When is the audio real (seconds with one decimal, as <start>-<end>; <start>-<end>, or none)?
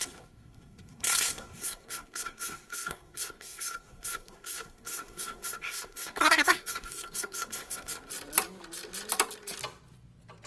8.1-10.5